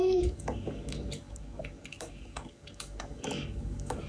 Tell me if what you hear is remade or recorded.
remade